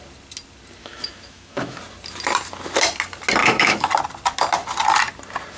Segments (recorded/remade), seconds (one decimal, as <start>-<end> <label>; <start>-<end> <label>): 0.0-0.8 recorded; 0.8-1.8 remade; 1.8-3.4 recorded; 3.4-3.9 remade; 3.9-5.6 recorded